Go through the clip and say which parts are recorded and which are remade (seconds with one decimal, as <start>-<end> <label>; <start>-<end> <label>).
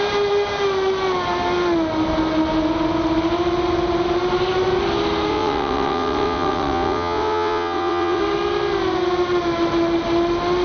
0.0-5.3 recorded; 5.3-8.2 remade; 8.2-10.6 recorded